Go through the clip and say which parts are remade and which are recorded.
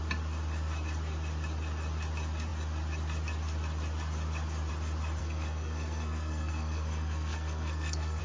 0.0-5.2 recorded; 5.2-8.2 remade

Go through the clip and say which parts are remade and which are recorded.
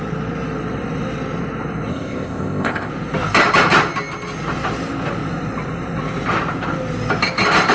0.0-1.9 recorded; 1.9-2.9 remade; 2.9-7.7 recorded